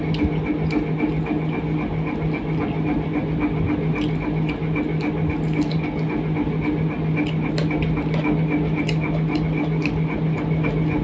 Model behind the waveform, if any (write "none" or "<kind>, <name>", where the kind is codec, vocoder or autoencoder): none